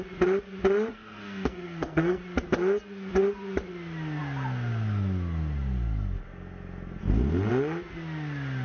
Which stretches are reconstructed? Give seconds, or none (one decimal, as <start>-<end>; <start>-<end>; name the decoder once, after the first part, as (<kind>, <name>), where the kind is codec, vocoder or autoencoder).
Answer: 0.9-2.2 (codec, SNAC)